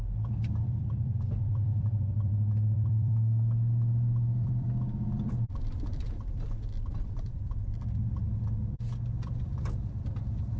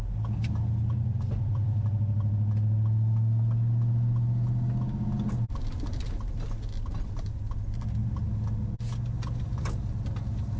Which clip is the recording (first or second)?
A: second